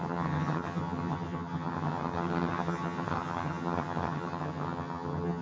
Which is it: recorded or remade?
remade